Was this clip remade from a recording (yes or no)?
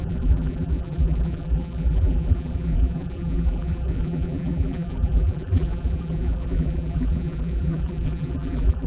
yes